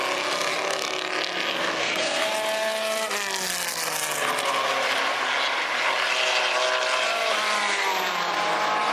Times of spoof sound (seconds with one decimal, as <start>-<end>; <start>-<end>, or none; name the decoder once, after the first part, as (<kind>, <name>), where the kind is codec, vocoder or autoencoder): 1.6-2.3 (codec, SNAC)